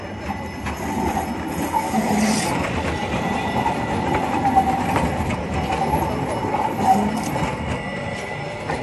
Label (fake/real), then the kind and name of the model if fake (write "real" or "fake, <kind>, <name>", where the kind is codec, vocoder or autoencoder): real